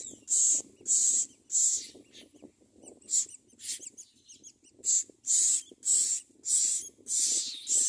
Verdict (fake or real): real